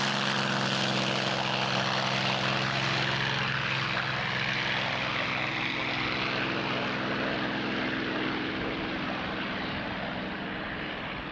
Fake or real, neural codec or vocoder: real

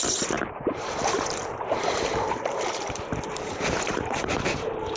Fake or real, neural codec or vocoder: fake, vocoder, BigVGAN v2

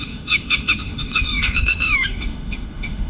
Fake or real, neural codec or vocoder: fake, autoencoder, DAC-VAE